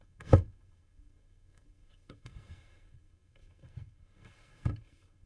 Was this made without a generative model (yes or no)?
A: no